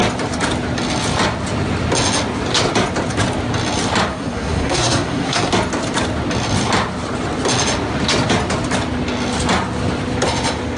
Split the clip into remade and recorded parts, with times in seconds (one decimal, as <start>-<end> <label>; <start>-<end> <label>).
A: 0.0-4.1 recorded; 4.1-5.5 remade; 5.5-10.8 recorded